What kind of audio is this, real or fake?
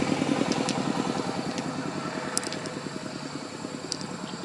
real